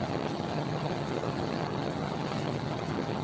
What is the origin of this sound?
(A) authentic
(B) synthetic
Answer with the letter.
B